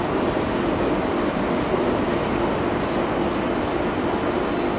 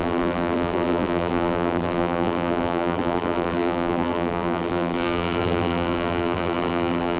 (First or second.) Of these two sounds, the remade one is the second